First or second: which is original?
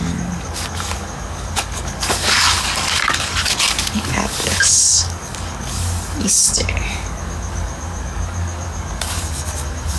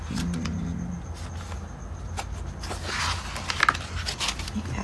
second